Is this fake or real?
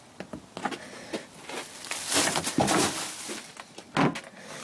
real